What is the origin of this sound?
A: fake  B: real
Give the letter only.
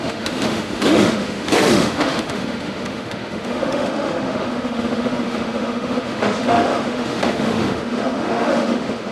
A